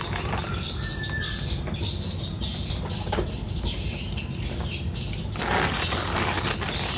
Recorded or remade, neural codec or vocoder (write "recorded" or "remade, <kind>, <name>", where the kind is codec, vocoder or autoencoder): recorded